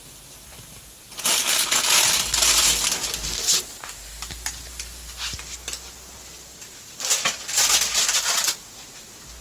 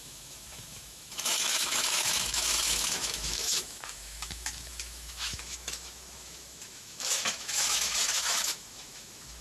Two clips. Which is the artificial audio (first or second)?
second